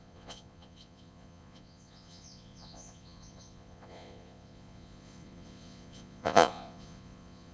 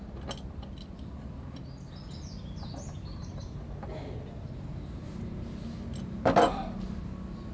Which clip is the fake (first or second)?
first